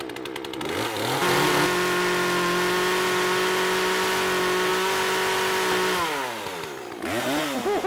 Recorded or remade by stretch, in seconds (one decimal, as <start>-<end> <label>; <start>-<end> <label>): 0.0-7.9 recorded

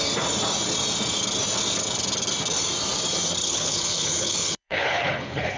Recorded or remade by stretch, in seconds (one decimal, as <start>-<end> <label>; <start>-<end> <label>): 0.0-3.4 recorded; 3.4-5.6 remade

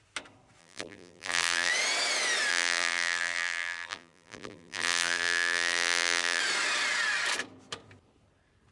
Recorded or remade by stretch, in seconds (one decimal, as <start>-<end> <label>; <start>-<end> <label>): 0.0-0.6 recorded; 0.6-1.7 remade; 1.7-2.5 recorded; 2.5-6.4 remade; 6.4-8.7 recorded

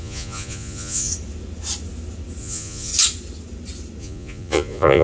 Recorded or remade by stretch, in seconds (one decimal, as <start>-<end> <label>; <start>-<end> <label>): 0.0-1.1 remade; 1.1-2.4 recorded; 2.4-2.9 remade; 2.9-4.0 recorded; 4.0-5.0 remade

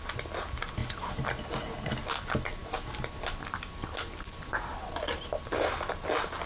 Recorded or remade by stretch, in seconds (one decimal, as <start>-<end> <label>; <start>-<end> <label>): 0.0-6.5 recorded

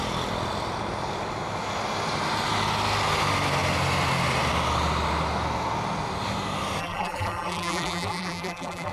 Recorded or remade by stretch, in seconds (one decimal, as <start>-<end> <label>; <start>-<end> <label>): 0.0-6.8 recorded; 6.8-8.9 remade

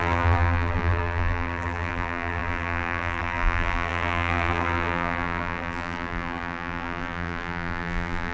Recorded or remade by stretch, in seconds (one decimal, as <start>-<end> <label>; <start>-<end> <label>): 0.0-8.3 remade

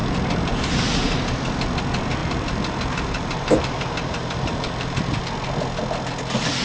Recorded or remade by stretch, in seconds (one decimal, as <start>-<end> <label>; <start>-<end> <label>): 0.0-0.7 remade; 0.7-2.2 recorded; 2.2-5.2 remade; 5.2-6.6 recorded